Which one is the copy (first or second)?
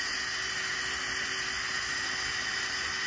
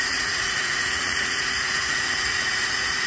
second